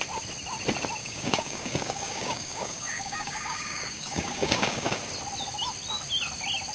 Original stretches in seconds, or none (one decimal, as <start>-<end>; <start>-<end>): 0.0-1.0; 5.0-6.7